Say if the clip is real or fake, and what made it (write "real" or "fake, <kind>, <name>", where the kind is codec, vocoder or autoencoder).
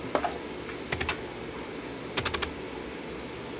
real